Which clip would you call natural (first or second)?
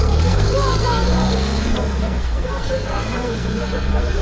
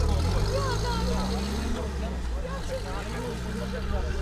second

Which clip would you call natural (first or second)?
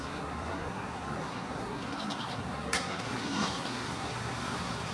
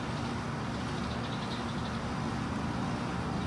second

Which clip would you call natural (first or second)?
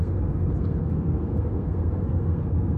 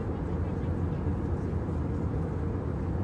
second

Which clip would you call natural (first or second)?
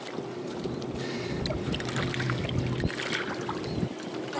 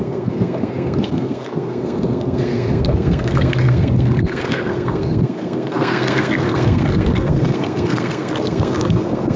first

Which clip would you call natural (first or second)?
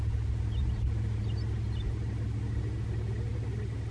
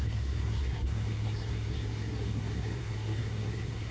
first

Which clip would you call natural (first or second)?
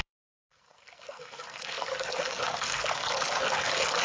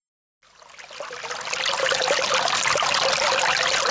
second